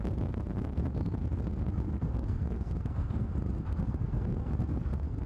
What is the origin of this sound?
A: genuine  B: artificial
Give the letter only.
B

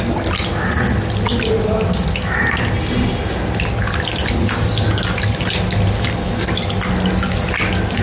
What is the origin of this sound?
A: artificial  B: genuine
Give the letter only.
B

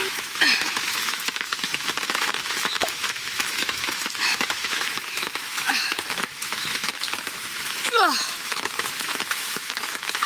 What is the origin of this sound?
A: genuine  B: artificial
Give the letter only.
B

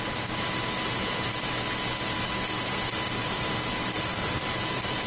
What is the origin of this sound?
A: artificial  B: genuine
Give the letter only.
B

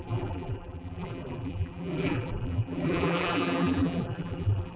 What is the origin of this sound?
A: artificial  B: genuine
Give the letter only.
A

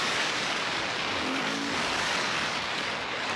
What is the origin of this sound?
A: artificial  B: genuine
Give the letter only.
A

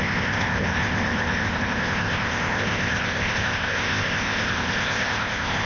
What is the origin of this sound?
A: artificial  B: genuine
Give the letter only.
A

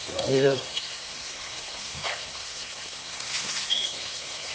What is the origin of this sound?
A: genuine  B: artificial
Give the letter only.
B